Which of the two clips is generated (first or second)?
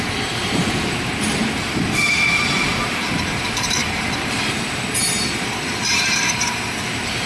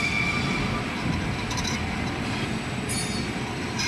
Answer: first